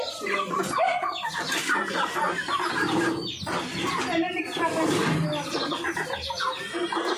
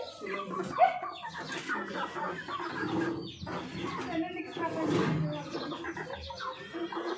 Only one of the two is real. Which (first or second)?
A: second